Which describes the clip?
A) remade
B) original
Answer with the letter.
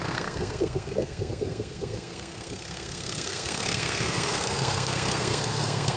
A